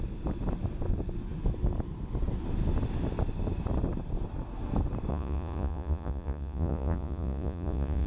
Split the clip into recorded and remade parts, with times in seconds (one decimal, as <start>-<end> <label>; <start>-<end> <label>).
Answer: 0.0-5.1 recorded; 5.1-8.1 remade

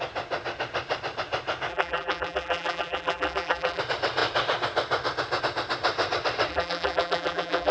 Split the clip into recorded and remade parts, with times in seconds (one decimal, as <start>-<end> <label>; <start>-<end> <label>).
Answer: 0.0-1.7 recorded; 1.7-3.8 remade; 3.8-6.5 recorded; 6.5-7.7 remade

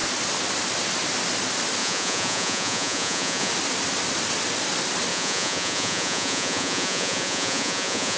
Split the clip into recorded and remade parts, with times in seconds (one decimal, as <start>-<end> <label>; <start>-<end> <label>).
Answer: 0.0-1.8 recorded; 1.8-3.5 remade; 3.5-5.1 recorded; 5.1-8.2 remade

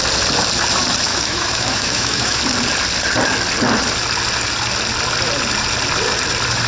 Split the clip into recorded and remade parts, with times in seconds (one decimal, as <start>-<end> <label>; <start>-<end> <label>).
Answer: 0.0-1.1 recorded; 1.1-2.4 remade; 2.4-6.7 recorded

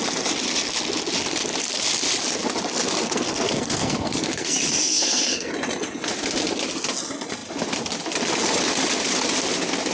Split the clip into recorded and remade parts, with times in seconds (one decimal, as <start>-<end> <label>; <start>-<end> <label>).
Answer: 0.0-3.0 recorded; 3.0-5.5 remade; 5.5-9.9 recorded

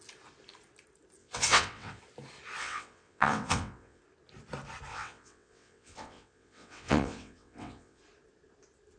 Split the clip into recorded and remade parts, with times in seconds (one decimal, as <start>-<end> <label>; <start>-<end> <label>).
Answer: 0.0-1.2 recorded; 1.2-2.0 remade; 2.0-2.6 recorded; 2.6-4.0 remade; 4.0-4.9 recorded; 4.9-8.0 remade; 8.0-9.0 recorded

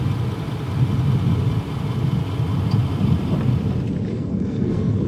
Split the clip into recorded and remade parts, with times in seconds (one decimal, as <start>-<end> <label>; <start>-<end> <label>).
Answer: 0.0-4.1 recorded; 4.1-5.1 remade